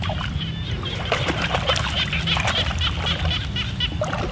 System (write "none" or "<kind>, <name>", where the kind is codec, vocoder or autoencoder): none